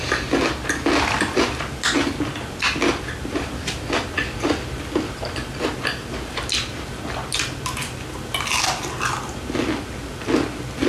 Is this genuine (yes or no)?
yes